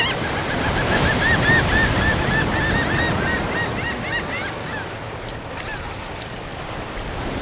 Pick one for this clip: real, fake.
real